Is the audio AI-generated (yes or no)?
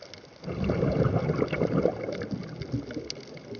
no